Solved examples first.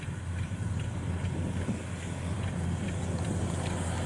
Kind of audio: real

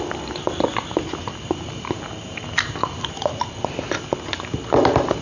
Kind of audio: real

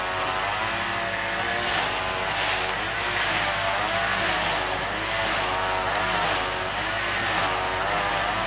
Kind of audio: real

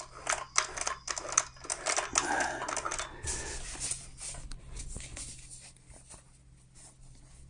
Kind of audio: real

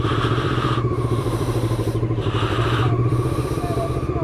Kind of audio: fake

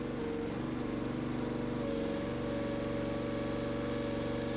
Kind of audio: real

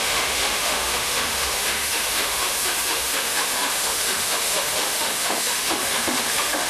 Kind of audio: fake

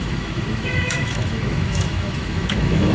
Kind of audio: fake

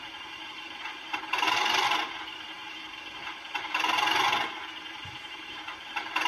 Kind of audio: real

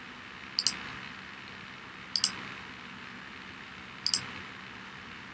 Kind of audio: real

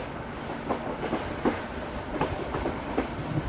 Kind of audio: real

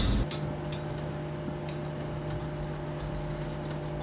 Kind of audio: real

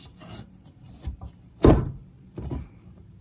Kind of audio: fake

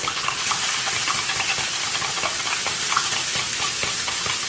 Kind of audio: real